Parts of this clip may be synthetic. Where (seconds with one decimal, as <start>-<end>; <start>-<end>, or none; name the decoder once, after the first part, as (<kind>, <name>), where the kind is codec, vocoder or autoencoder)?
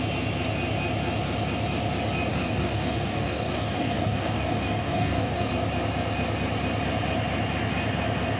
2.3-5.5 (codec, DAC)